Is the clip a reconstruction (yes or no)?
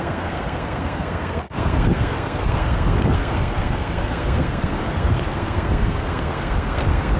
yes